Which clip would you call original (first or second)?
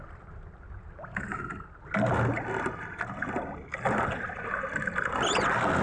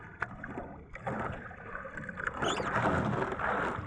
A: first